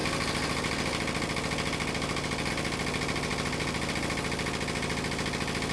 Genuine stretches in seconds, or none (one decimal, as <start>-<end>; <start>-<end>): 0.0-5.7

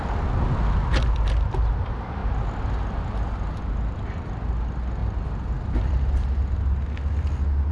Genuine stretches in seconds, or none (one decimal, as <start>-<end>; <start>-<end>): 0.0-7.7

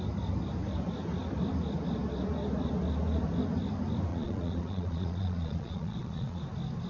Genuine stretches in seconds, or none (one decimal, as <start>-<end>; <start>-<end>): 0.0-4.1; 6.4-6.9

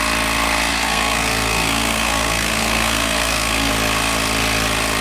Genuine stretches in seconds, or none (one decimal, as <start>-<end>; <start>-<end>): 0.0-0.7; 3.7-5.0

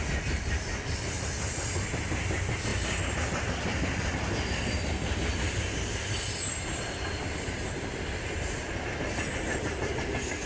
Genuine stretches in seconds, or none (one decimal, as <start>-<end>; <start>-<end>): 0.0-10.5